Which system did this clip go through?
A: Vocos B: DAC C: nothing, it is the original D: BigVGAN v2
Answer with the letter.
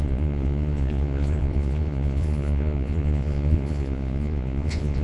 A